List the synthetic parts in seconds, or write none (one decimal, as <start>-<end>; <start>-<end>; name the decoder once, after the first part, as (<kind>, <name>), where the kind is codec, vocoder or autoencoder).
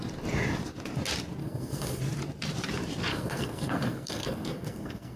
1.4-2.0 (codec, SNAC); 3.1-5.2